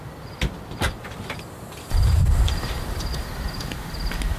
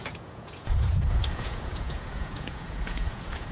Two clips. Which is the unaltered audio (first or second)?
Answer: first